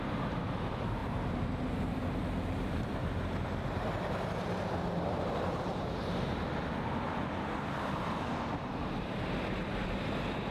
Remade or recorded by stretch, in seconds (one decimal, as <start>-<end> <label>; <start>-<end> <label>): 0.0-3.0 remade; 3.0-4.4 recorded; 4.4-6.4 remade; 6.4-8.5 recorded; 8.5-10.5 remade